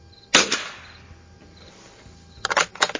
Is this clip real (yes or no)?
yes